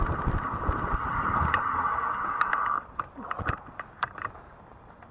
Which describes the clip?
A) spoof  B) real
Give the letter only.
A